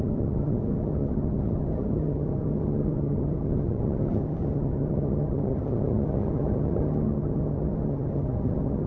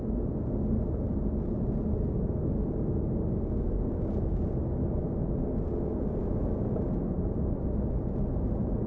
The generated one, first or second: first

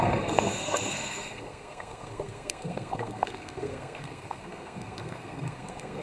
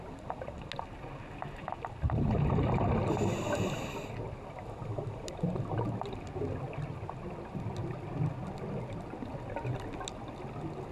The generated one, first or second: first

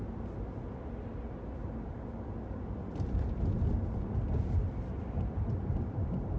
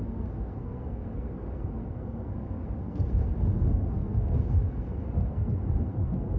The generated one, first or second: second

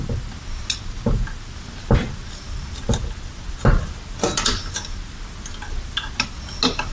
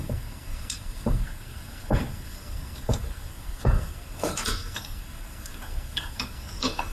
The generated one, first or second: second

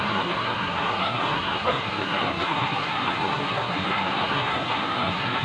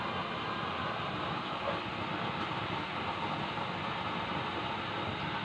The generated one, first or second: first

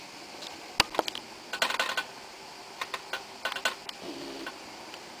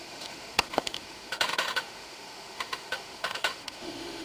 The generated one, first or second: second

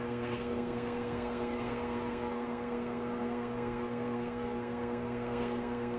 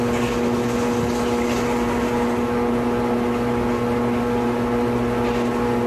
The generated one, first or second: first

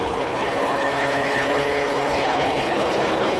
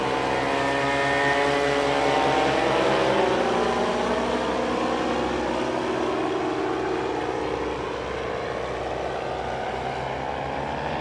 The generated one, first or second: first